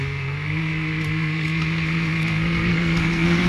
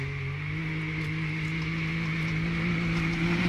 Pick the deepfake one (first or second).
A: first